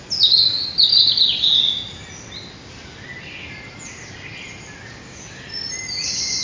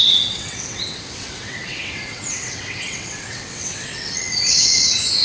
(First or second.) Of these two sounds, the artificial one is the second